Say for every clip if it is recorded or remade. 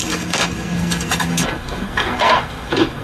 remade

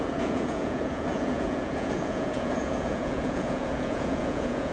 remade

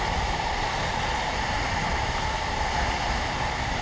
recorded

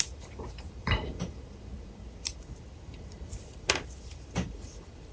remade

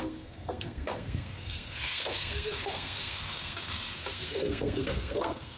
remade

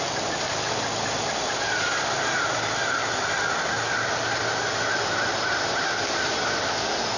recorded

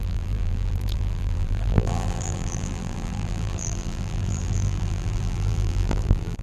remade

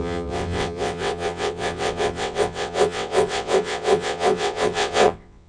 remade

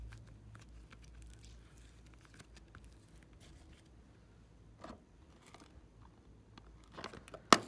recorded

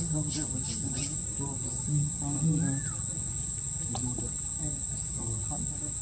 recorded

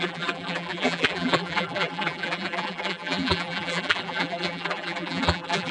remade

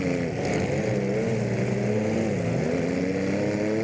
recorded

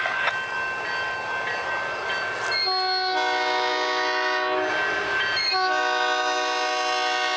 recorded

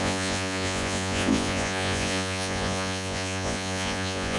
remade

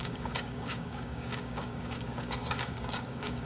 remade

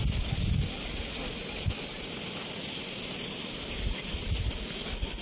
recorded